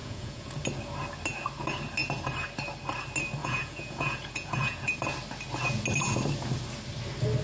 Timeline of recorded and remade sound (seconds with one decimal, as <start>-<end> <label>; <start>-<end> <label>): 0.0-0.6 remade; 0.6-3.4 recorded; 3.4-4.9 remade; 4.9-7.4 recorded